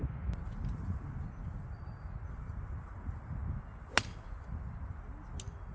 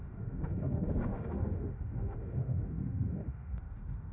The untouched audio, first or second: first